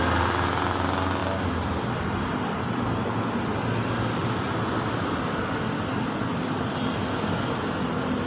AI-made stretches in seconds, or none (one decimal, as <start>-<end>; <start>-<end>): none